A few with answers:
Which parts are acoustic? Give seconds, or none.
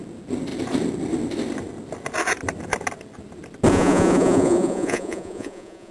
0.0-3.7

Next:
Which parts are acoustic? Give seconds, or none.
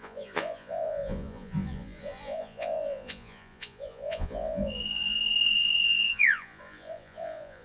none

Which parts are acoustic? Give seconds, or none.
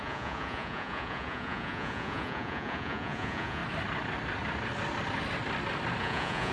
3.6-6.0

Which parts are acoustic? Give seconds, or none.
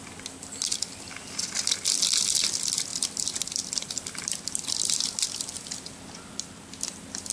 0.0-7.3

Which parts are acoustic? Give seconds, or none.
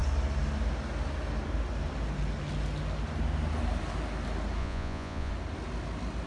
0.0-4.6; 5.3-6.3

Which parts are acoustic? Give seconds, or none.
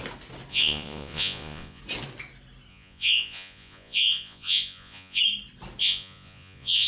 0.0-0.5; 1.8-2.7; 5.2-5.8